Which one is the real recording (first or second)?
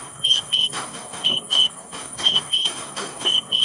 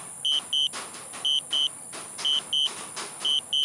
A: second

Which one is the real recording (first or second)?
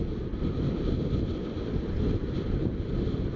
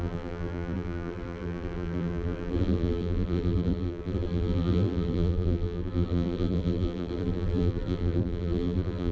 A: first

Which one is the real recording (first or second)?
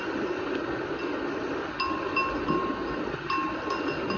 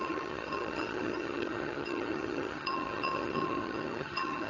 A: first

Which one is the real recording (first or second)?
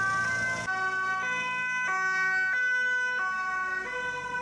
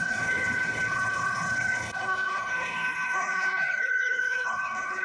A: first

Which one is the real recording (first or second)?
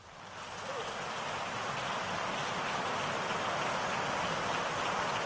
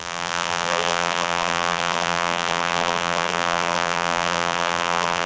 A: first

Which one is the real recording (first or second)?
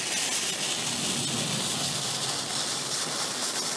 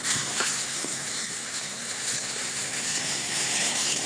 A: first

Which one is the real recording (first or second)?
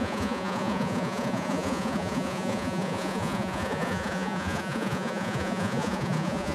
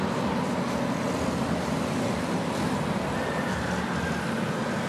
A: second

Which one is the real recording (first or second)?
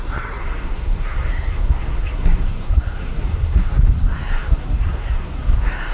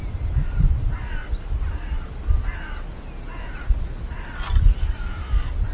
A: second